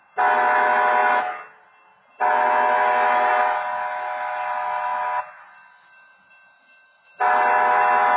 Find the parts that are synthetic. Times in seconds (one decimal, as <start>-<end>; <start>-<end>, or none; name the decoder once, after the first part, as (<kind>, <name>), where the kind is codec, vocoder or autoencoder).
none